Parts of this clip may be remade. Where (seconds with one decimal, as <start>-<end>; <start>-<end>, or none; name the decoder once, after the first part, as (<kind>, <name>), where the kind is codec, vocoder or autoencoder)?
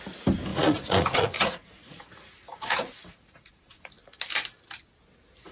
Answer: 0.5-3.8 (vocoder, Vocos)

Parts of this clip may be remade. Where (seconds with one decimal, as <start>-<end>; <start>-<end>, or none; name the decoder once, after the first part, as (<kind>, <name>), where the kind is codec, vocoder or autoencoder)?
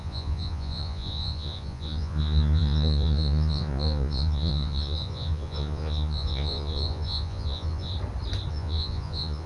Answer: 0.0-7.9 (vocoder, Vocos); 8.5-9.5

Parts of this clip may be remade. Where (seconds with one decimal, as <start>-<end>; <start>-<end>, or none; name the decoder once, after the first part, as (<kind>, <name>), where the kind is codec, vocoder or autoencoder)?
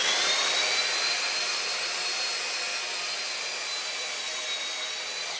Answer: none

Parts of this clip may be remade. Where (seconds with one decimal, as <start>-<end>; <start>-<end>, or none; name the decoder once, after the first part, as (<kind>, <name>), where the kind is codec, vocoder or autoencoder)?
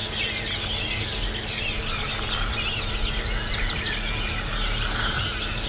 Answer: none